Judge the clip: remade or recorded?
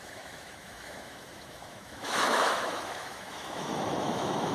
remade